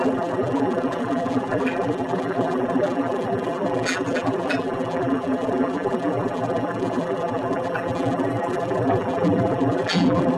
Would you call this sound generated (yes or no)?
yes